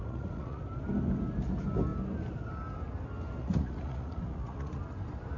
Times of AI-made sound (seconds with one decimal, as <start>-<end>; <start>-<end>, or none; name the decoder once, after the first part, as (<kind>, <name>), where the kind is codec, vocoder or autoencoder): 0.0-0.6 (vocoder, Vocos); 3.4-4.8